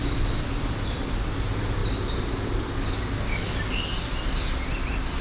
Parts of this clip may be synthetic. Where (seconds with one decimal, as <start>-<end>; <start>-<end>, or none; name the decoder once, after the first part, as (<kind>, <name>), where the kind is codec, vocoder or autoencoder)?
none